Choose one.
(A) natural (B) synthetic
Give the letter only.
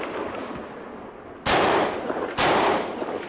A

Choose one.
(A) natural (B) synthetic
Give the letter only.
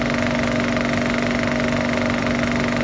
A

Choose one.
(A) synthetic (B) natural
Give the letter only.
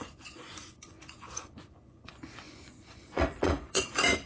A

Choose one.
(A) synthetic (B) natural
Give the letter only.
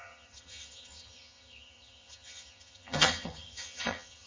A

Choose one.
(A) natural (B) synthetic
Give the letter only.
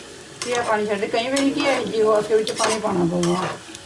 A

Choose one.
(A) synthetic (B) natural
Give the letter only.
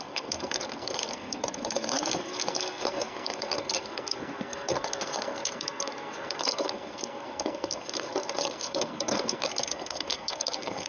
A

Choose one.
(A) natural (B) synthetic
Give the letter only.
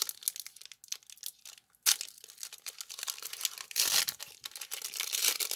A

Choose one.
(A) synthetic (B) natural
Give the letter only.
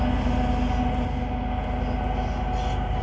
B